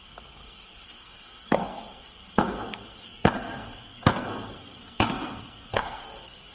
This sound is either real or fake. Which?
fake